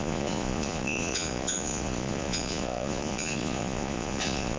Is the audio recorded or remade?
remade